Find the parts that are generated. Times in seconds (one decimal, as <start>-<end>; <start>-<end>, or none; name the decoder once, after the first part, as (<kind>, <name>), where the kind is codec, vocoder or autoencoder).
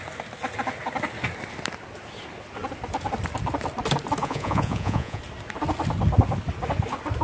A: 4.2-5.2 (vocoder, Vocos)